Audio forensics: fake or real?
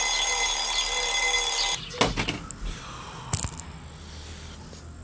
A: real